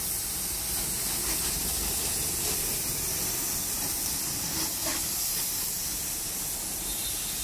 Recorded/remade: remade